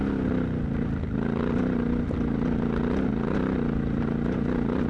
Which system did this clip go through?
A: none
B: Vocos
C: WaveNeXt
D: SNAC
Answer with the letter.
A